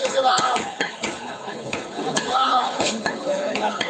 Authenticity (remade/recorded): remade